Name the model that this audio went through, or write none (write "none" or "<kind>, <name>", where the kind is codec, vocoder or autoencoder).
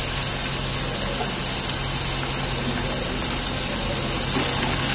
none